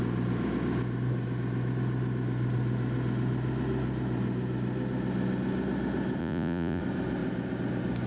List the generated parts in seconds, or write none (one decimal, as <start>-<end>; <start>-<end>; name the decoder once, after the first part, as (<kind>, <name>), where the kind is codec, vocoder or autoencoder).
6.2-6.8 (vocoder, Vocos)